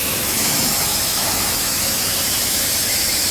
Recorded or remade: remade